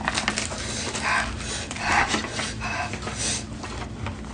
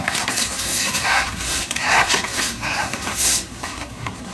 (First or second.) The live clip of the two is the first